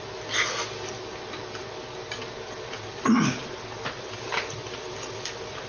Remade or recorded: recorded